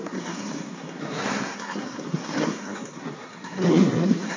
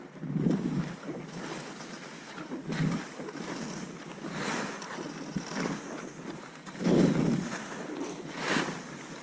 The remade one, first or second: first